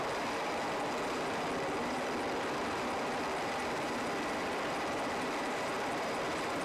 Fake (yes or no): no